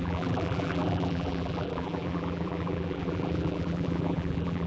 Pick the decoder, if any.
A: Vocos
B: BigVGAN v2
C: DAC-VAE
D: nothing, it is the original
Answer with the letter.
B